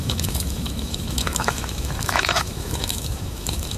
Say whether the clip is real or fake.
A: fake